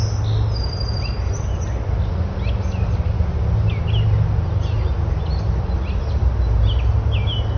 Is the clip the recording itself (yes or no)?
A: yes